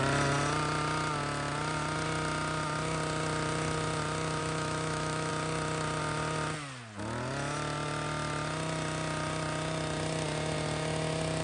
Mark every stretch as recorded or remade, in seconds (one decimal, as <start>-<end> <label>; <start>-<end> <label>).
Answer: 0.0-4.4 recorded; 4.4-5.3 remade; 5.3-11.4 recorded